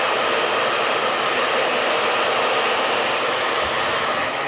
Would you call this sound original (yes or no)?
yes